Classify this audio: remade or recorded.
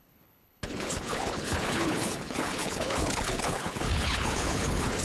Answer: remade